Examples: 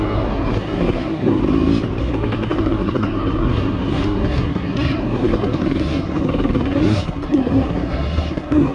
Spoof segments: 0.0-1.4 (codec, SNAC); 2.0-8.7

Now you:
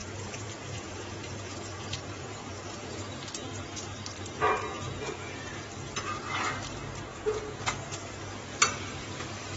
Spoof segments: 0.0-3.0 (vocoder, Vocos); 4.7-5.3; 7.1-8.1